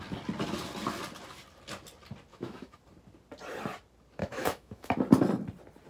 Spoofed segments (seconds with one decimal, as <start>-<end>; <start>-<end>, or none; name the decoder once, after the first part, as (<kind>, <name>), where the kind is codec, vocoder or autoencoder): 2.3-2.8 (autoencoder, DAC-VAE); 4.2-4.9